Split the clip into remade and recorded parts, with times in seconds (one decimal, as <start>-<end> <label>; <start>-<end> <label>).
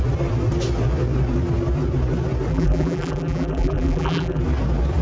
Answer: 0.0-2.5 recorded; 2.5-4.4 remade; 4.4-5.0 recorded